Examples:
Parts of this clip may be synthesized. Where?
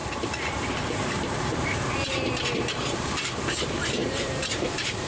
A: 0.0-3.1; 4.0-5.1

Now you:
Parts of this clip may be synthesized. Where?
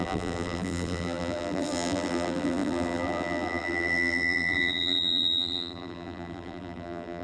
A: 0.0-7.2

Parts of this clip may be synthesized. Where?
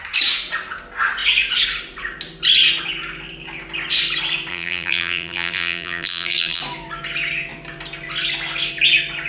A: 4.5-6.6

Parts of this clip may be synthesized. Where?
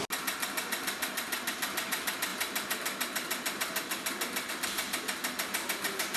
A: none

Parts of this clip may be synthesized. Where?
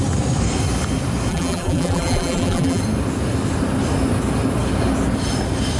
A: 1.3-2.8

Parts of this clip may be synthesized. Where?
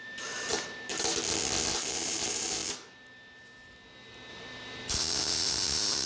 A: 0.0-0.9; 1.7-2.6; 4.3-6.1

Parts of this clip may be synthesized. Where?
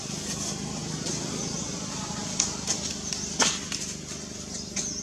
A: 2.2-3.4